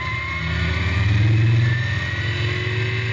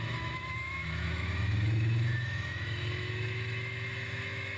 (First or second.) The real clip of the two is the first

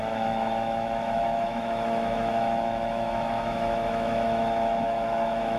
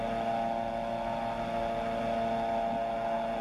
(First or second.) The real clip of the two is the second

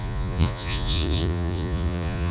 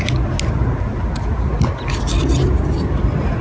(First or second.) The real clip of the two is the second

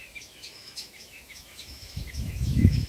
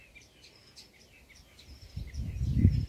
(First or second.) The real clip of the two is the second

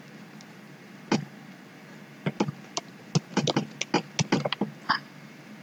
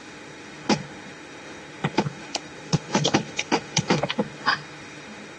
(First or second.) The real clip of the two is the first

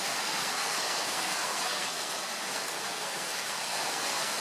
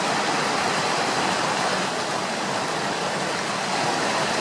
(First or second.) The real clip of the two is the second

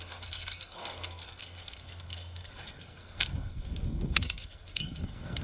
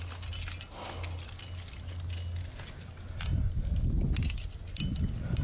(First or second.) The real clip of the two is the second